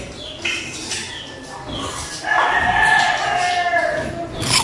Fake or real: real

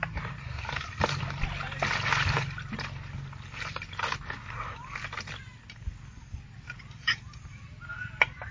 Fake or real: real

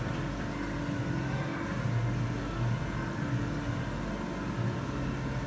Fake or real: real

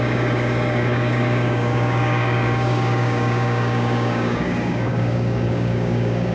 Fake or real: fake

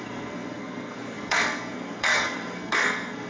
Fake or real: fake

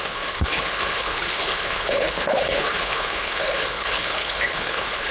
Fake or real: fake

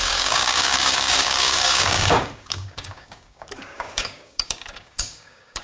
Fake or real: fake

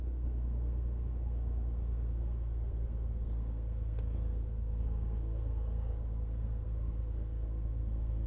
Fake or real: fake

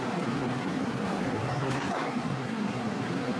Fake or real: fake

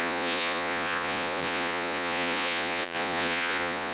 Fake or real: fake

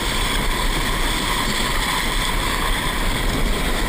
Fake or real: real